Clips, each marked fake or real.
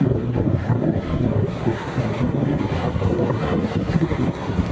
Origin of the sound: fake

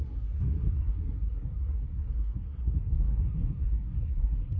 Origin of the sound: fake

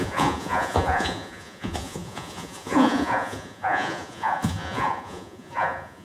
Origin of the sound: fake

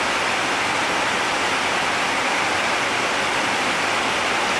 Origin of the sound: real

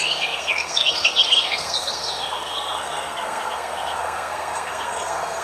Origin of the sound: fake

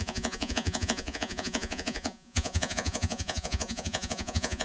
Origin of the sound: fake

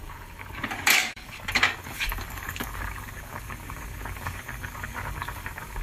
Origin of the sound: fake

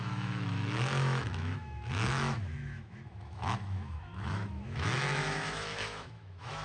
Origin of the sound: fake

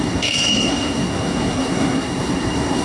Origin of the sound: fake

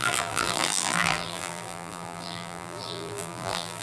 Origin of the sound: fake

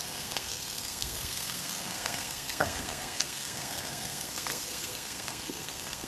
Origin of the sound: fake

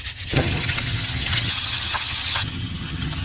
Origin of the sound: fake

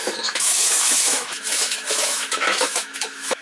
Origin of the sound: fake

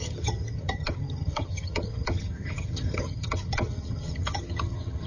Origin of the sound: fake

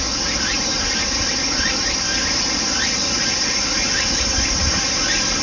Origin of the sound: real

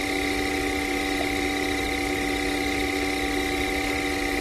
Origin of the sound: real